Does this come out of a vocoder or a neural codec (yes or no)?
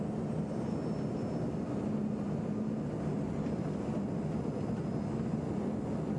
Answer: no